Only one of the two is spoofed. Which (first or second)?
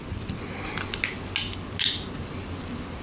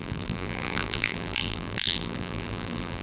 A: second